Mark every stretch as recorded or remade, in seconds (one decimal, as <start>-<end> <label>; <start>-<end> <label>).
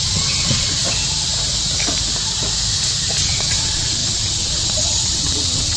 0.0-0.8 remade; 0.8-3.2 recorded; 3.2-5.8 remade